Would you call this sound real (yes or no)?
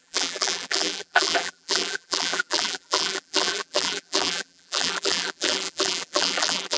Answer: no